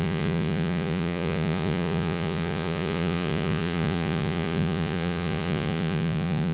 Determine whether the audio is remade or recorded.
remade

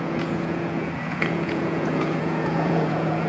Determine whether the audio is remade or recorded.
remade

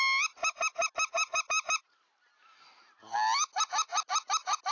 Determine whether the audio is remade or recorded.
recorded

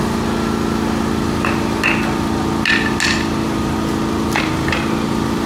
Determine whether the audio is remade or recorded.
recorded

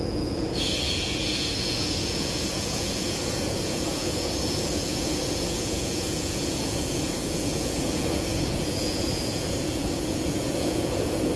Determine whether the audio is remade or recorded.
remade